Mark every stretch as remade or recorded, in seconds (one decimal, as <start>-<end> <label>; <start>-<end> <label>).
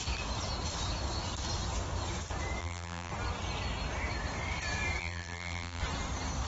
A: 0.0-2.6 recorded; 2.6-3.1 remade; 3.1-5.0 recorded; 5.0-5.8 remade; 5.8-6.5 recorded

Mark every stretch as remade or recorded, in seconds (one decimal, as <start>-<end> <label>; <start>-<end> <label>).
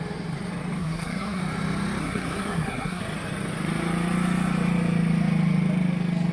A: 0.0-0.8 recorded; 0.8-1.4 remade; 1.4-2.0 recorded; 2.0-3.0 remade; 3.0-6.3 recorded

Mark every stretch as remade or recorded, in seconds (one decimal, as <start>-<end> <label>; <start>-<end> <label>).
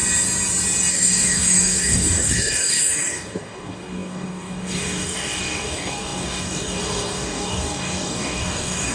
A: 0.0-0.9 recorded; 0.9-8.9 remade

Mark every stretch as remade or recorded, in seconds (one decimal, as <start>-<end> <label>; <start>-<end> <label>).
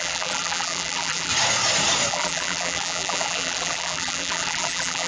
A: 0.0-1.3 remade; 1.3-2.1 recorded; 2.1-5.1 remade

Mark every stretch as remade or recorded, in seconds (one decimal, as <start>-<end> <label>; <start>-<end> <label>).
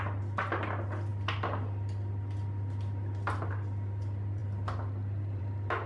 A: 0.0-5.9 recorded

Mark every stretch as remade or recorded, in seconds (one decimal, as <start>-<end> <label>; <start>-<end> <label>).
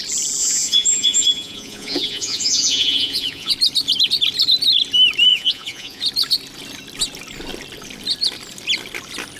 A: 0.0-0.4 recorded; 0.4-3.5 remade; 3.5-5.3 recorded; 5.3-6.0 remade; 6.0-9.4 recorded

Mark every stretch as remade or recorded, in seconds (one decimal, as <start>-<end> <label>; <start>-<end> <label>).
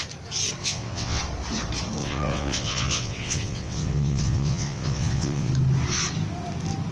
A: 0.0-0.6 recorded; 0.6-1.2 remade; 1.2-2.0 recorded; 2.0-5.5 remade; 5.5-6.9 recorded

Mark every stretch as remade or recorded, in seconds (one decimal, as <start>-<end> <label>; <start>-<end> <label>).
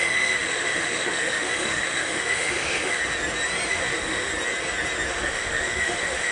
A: 0.0-3.0 remade; 3.0-3.7 recorded; 3.7-4.3 remade; 4.3-5.1 recorded; 5.1-6.3 remade